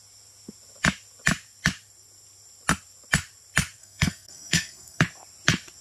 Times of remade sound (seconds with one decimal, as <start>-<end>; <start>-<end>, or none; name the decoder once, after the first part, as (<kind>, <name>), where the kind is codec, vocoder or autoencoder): 3.8-5.0 (codec, SNAC)